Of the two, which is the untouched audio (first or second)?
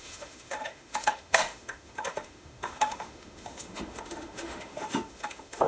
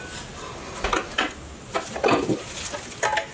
second